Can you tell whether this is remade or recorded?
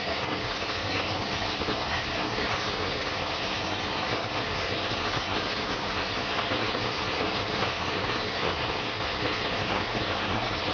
remade